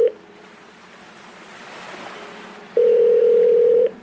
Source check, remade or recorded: remade